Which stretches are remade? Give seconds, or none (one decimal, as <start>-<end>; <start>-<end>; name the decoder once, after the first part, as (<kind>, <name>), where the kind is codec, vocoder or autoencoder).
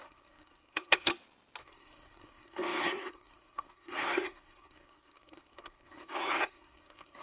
0.0-1.1 (codec, SNAC); 1.6-7.2